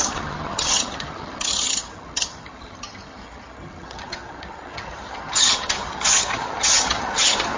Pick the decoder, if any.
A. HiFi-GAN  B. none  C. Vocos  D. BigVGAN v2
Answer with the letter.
A